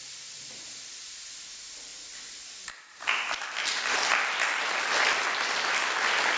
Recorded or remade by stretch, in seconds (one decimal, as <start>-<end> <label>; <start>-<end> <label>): 0.0-6.4 recorded